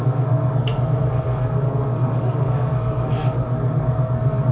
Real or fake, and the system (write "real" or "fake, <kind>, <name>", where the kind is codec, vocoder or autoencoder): fake, codec, SNAC